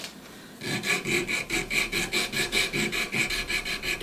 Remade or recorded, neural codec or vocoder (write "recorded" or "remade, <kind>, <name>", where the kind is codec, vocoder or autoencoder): recorded